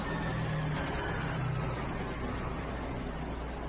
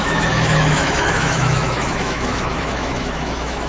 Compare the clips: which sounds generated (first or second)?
second